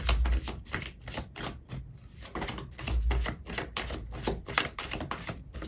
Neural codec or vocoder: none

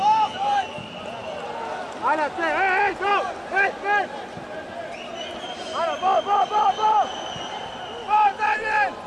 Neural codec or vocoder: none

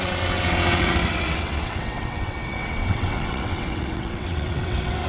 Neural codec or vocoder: vocoder, WaveNeXt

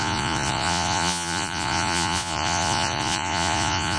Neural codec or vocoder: vocoder, Vocos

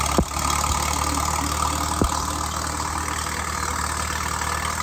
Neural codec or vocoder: none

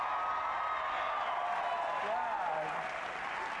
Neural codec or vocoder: none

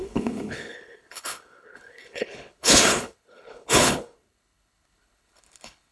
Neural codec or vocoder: codec, HILCodec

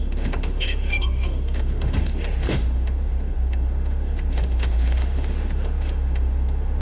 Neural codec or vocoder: autoencoder, DAC-VAE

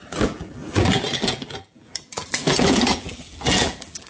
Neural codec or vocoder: vocoder, BigVGAN v2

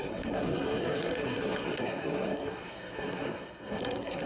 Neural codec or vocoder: codec, SNAC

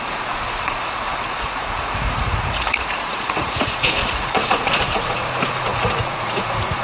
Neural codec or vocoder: vocoder, Vocos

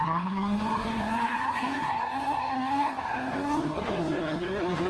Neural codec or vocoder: codec, SNAC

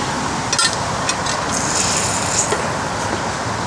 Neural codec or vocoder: none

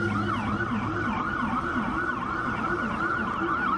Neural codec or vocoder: none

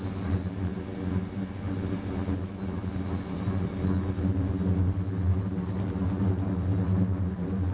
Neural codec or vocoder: none